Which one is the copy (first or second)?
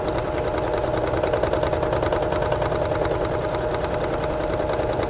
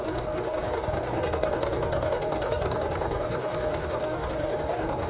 second